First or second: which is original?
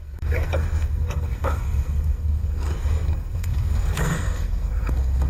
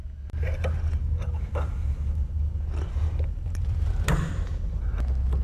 second